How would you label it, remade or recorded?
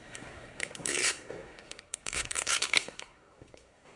remade